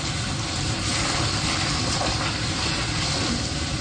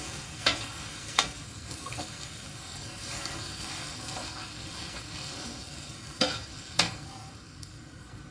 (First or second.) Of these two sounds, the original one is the first